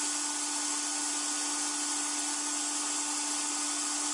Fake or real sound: real